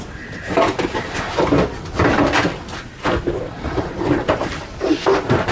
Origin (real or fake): real